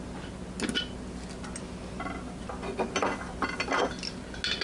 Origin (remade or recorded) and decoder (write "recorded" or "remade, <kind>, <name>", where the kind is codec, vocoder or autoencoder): recorded